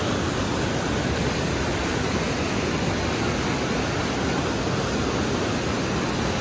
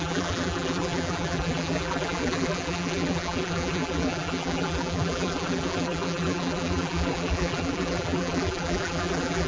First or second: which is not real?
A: second